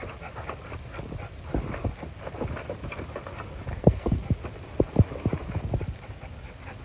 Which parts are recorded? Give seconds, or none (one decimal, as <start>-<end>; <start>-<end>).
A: 0.0-3.7; 4.2-6.8

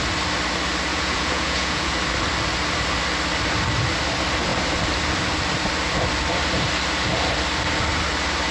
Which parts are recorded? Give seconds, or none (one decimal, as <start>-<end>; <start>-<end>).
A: 0.0-0.9; 1.9-8.5

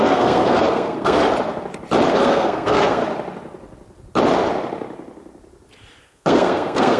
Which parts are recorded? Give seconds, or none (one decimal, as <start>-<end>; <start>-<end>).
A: 1.2-2.1; 3.0-6.0